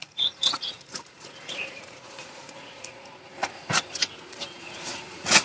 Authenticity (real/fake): fake